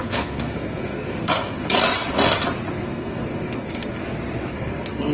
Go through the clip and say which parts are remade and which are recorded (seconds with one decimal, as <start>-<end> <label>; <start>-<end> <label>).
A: 0.0-1.6 remade; 1.6-2.7 recorded; 2.7-4.0 remade; 4.0-4.5 recorded; 4.5-5.1 remade